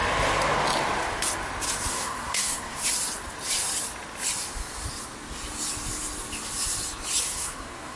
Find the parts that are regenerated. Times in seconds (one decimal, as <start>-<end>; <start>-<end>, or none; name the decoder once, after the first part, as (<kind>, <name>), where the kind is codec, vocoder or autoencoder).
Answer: 1.9-2.8 (codec, SNAC); 7.2-8.0